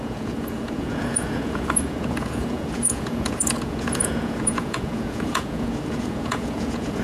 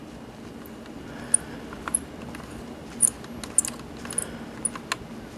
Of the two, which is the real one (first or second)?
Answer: second